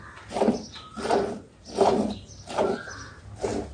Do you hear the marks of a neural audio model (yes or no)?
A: no